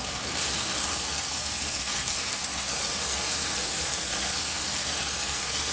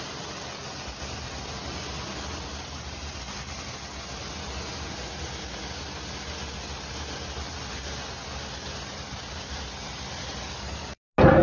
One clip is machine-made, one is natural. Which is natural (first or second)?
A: second